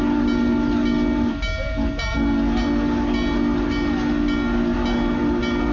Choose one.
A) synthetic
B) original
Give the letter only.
B